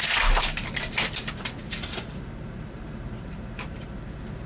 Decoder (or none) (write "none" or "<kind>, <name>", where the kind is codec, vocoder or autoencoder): none